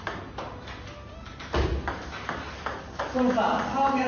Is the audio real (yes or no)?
yes